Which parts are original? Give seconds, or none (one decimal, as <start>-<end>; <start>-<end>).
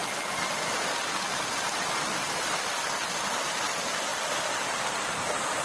0.0-5.6